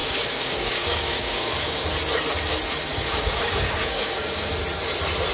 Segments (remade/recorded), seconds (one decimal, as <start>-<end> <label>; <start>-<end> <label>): 0.0-1.8 remade; 1.8-2.9 recorded; 2.9-4.5 remade; 4.5-5.3 recorded